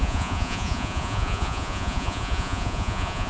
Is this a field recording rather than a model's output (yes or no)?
no